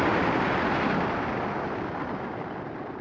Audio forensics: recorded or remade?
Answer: recorded